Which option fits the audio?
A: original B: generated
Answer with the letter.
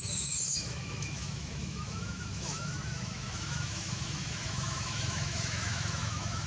B